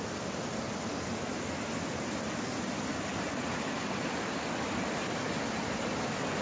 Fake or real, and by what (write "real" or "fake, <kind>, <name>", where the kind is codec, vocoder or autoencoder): real